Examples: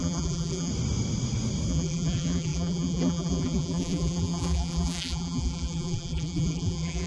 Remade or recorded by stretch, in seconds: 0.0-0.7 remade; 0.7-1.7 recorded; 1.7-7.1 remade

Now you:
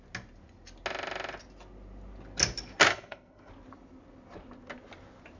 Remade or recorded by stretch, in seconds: 0.0-2.9 recorded; 2.9-3.5 remade; 3.5-5.4 recorded

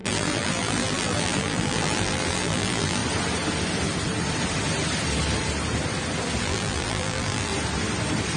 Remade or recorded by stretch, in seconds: 0.0-3.0 remade; 3.0-6.4 recorded; 6.4-7.5 remade; 7.5-8.4 recorded

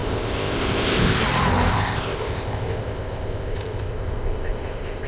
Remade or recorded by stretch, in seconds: 0.0-1.2 remade; 1.2-1.7 recorded; 1.7-5.1 remade

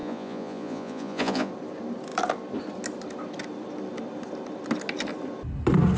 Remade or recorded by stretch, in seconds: 0.0-1.5 remade; 1.5-6.0 recorded